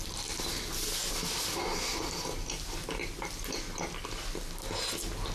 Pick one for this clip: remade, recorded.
recorded